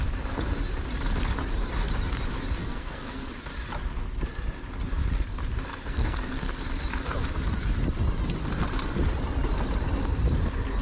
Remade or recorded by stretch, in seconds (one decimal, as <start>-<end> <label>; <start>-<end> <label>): 0.0-2.6 recorded; 2.6-3.3 remade; 3.3-5.7 recorded; 5.7-6.6 remade; 6.6-10.8 recorded